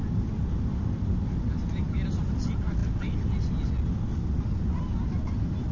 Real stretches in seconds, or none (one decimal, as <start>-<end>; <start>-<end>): 0.0-5.7